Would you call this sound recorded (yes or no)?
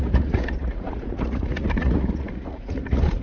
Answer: no